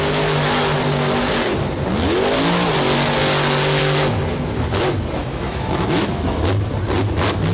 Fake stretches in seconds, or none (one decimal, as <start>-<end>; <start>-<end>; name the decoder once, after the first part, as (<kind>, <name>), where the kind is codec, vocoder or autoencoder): 5.2-6.7 (autoencoder, DAC-VAE)